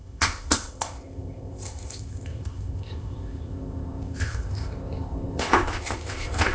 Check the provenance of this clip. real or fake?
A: fake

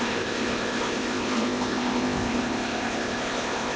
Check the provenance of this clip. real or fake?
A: fake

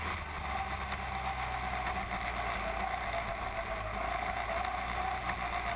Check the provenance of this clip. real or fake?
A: real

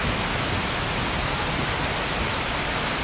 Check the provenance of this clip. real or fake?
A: real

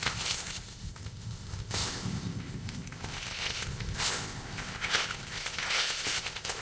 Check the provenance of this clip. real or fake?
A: fake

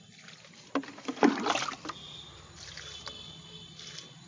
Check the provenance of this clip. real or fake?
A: real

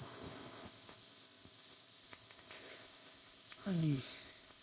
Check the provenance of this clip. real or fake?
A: fake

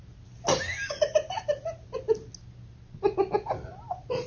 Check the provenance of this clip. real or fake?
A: real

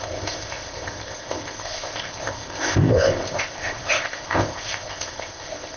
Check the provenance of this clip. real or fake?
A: fake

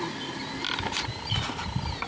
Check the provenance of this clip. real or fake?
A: real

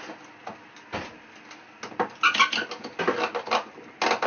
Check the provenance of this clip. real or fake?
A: real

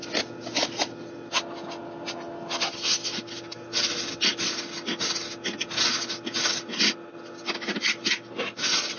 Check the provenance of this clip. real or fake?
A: real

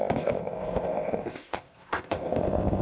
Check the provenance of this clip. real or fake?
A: fake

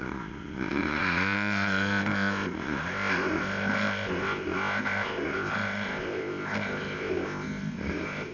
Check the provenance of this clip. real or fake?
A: fake